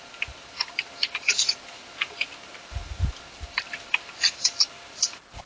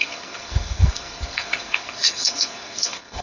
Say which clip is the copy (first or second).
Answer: second